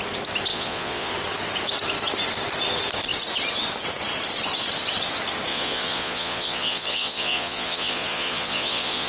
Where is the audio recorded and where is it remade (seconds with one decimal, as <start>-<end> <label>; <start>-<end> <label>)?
0.0-0.5 recorded; 0.5-1.1 remade; 1.1-5.5 recorded; 5.5-9.1 remade